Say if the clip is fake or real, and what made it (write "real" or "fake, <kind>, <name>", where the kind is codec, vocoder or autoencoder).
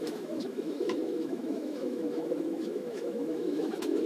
fake, autoencoder, DAC-VAE